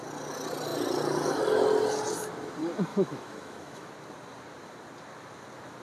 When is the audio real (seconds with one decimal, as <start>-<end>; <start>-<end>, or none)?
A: 0.0-2.9; 3.9-5.8